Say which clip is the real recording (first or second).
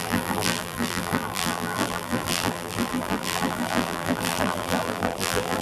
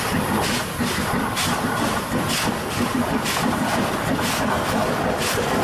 second